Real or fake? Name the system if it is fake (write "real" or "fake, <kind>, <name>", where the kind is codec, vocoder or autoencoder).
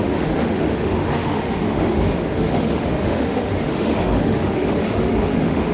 fake, autoencoder, DAC-VAE